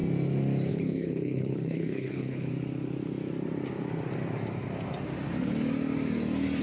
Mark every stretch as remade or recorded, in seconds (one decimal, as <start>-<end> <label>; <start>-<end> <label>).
0.0-0.7 recorded; 0.7-2.5 remade; 2.5-6.6 recorded